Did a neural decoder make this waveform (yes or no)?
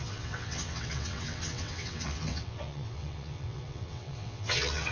yes